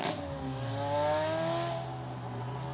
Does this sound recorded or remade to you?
recorded